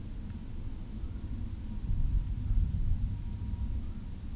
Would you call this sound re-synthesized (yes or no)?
no